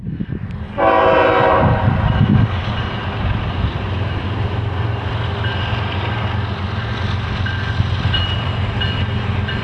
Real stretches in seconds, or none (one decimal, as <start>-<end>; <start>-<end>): 0.0-9.6